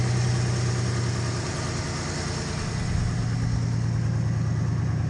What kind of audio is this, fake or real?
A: real